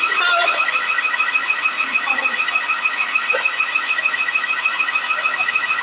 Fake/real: fake